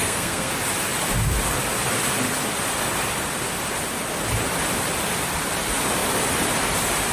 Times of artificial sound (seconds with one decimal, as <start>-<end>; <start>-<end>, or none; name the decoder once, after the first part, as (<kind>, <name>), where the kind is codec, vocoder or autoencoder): 0.0-0.5 (codec, SNAC)